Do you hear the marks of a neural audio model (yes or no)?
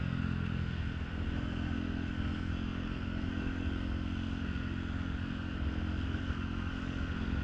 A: yes